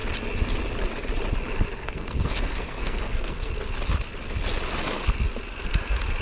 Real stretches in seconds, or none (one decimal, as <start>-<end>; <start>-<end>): 0.0-1.8; 3.5-6.2